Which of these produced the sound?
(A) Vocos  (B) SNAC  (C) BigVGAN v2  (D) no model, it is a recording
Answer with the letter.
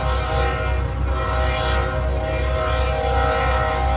D